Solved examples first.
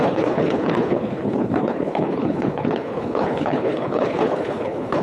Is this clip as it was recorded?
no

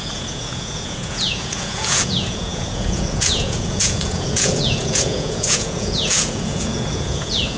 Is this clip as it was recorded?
no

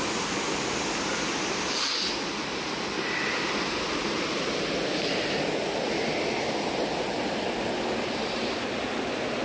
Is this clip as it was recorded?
yes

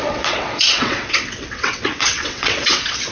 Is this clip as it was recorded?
no